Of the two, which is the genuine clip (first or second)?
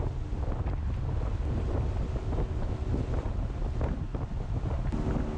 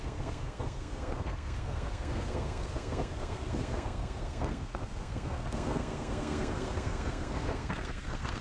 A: first